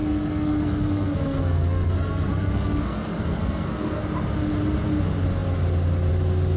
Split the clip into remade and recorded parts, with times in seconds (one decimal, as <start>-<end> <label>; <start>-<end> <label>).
0.0-4.0 remade; 4.0-6.6 recorded